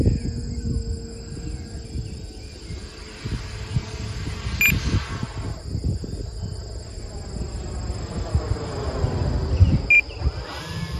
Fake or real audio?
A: real